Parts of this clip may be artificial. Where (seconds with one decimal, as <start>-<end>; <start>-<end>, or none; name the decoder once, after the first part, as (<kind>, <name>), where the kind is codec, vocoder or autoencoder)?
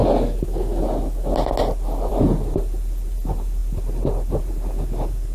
2.1-5.3 (vocoder, BigVGAN v2)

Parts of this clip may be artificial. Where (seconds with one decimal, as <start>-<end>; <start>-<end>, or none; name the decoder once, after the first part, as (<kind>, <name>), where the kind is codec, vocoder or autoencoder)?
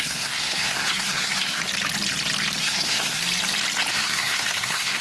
0.0-1.6 (codec, SNAC); 2.6-3.2; 3.9-5.0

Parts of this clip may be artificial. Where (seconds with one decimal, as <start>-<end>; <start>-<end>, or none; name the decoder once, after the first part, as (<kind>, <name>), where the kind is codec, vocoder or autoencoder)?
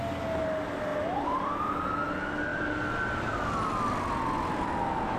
none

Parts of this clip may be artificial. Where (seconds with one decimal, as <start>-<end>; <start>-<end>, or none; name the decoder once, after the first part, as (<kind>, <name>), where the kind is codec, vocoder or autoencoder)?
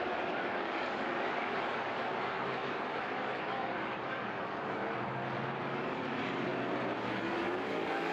0.0-4.8 (codec, DAC); 5.6-6.5; 7.0-8.1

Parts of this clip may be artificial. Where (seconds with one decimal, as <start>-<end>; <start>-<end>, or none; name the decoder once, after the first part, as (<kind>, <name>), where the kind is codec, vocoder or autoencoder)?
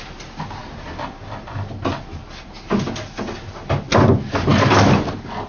none